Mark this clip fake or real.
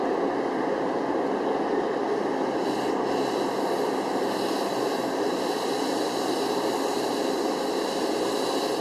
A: real